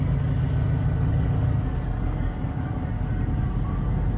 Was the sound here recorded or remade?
recorded